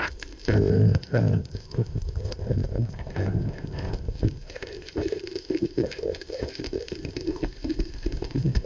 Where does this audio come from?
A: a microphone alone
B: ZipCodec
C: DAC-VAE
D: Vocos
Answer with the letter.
B